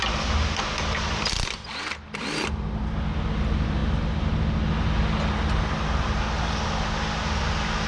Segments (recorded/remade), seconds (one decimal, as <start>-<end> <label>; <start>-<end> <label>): 0.0-7.9 recorded